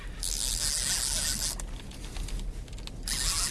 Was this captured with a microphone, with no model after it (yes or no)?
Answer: yes